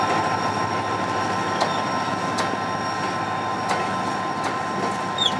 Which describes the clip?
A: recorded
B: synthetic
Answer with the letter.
A